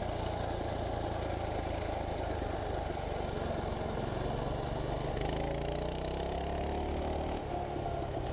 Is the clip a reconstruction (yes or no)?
no